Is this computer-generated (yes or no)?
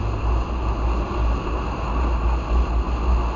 no